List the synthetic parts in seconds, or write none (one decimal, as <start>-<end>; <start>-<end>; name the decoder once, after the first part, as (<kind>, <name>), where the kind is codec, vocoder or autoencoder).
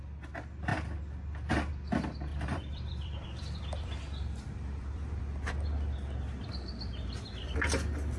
2.3-5.2 (vocoder, BigVGAN v2)